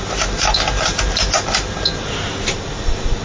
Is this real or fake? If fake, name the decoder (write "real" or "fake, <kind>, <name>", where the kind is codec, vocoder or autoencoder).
fake, vocoder, BigVGAN v2